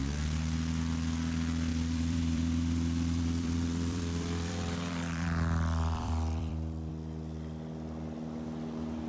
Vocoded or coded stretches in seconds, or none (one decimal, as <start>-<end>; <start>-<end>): 1.7-6.9